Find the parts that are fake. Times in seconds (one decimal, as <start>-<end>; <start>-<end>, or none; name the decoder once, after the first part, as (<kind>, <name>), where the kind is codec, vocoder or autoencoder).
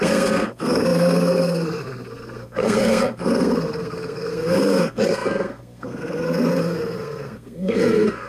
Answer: 0.0-8.3 (codec, SNAC)